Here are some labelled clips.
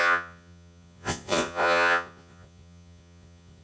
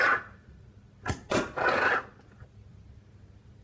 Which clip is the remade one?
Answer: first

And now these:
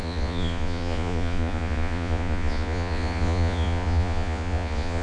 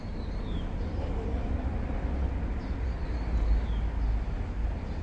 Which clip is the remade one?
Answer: first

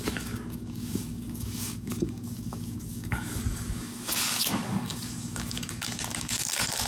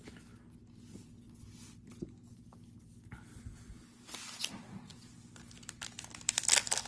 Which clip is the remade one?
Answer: first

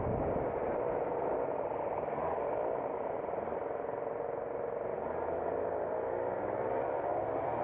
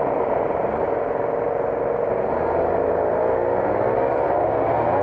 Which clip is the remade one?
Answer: first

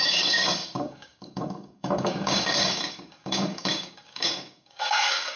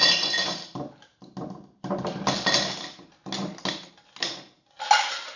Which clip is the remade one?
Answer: first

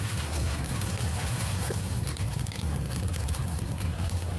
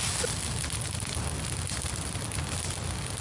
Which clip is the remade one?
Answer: first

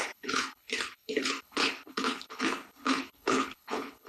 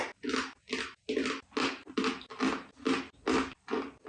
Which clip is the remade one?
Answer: first